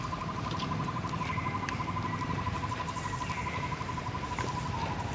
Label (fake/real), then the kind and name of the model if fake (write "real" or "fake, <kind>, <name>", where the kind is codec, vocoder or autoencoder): real